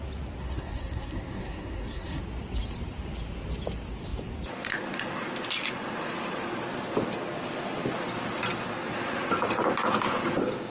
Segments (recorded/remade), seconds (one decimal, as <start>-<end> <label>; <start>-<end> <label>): 0.0-0.4 recorded; 0.4-2.2 remade; 2.2-10.7 recorded